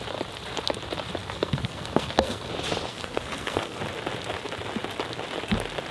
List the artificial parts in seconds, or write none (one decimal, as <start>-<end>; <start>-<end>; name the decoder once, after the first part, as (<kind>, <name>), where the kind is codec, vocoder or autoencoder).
1.2-2.5 (codec, SNAC); 2.9-3.8